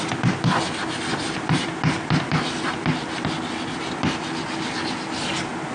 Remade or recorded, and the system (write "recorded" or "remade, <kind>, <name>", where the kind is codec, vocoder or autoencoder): recorded